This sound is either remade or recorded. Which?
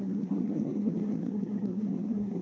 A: remade